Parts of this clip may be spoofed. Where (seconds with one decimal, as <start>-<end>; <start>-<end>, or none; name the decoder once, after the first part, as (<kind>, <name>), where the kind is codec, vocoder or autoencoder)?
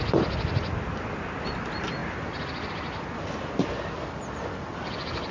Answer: none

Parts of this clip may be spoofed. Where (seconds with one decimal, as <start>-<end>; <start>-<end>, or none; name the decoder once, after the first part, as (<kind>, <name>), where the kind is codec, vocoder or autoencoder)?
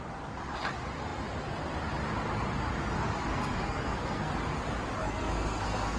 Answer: 3.3-4.3 (codec, SNAC); 5.0-6.0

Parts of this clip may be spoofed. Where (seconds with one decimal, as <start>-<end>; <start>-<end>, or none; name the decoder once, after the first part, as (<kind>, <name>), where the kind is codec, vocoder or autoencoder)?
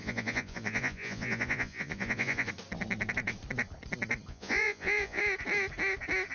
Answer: 0.0-2.5 (vocoder, Vocos); 4.3-5.2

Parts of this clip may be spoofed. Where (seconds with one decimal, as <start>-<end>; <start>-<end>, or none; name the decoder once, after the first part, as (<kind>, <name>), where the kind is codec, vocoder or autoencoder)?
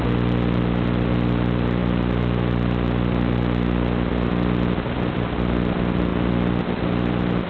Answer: none